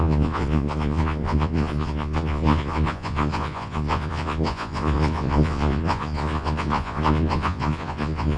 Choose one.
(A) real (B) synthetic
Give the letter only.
B